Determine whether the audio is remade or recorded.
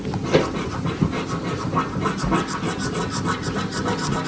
recorded